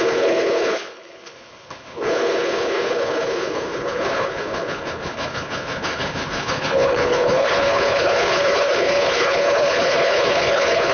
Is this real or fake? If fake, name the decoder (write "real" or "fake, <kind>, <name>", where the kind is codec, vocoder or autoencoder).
fake, codec, HILCodec